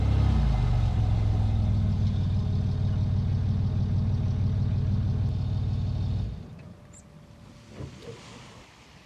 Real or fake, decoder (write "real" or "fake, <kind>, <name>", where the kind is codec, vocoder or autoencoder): real